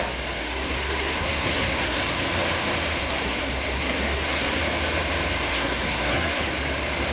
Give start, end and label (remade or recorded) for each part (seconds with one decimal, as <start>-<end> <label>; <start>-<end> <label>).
0.0-0.4 recorded; 0.4-2.0 remade; 2.0-3.0 recorded; 3.0-4.6 remade; 4.6-5.5 recorded; 5.5-6.5 remade; 6.5-7.1 recorded